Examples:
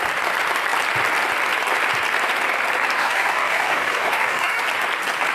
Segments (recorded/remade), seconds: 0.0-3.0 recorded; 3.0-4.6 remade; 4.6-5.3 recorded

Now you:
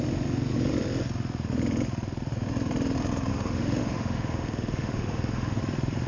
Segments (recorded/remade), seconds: 0.0-3.3 recorded; 3.3-5.6 remade; 5.6-6.1 recorded